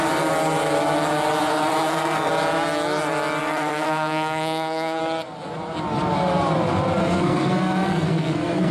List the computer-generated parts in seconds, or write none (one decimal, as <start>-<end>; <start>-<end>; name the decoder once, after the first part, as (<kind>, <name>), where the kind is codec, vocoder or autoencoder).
1.5-2.3 (codec, SNAC); 3.4-5.0; 7.0-8.7